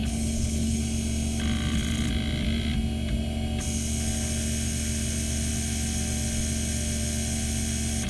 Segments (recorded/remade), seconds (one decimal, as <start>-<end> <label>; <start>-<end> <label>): 0.0-0.8 remade; 0.8-8.1 recorded